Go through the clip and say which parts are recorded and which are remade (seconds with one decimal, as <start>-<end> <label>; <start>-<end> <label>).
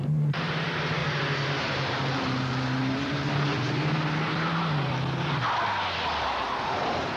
0.0-1.0 remade; 1.0-1.6 recorded; 1.6-3.5 remade; 3.5-6.2 recorded; 6.2-7.2 remade